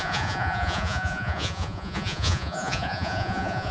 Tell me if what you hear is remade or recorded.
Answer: remade